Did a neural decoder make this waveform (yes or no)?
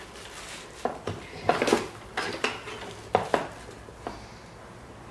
no